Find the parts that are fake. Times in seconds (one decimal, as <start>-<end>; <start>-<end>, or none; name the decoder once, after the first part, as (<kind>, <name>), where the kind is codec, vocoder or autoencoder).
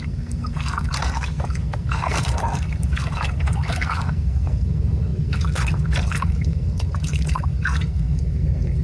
0.0-8.8 (codec, SNAC)